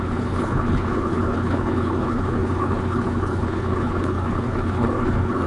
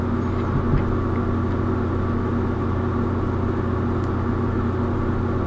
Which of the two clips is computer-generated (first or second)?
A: first